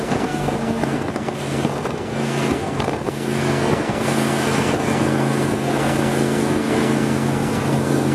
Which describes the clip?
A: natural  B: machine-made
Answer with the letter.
B